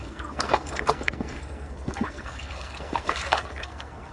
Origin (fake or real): fake